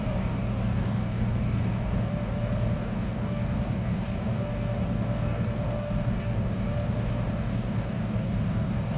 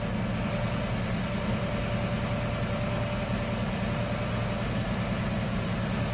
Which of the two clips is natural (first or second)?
second